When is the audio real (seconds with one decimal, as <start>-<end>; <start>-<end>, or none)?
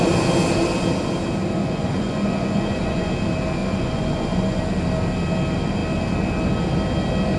0.0-1.6; 3.1-3.6; 4.6-7.4